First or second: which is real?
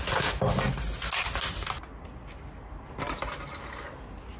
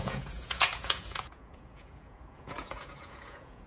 first